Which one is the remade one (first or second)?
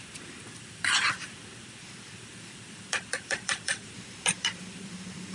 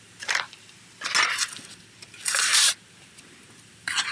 first